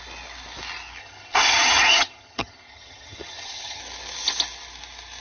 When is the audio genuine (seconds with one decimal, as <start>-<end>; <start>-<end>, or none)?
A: 0.0-1.0; 3.8-5.2